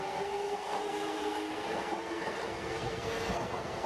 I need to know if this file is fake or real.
fake